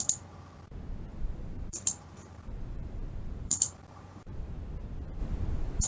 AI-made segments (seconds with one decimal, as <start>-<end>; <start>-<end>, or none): 1.1-4.5; 5.2-5.9